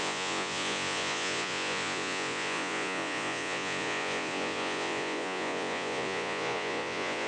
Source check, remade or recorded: remade